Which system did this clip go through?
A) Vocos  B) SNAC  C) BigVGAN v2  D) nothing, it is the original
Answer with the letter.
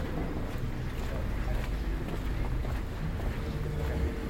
D